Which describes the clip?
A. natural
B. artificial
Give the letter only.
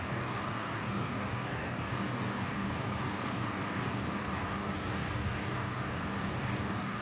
B